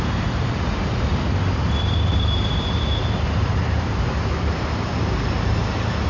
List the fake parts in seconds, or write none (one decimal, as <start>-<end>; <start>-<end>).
0.0-1.1; 1.8-6.1